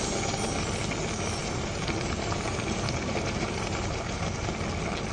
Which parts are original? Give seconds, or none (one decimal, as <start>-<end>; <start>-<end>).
0.0-1.4; 4.5-5.1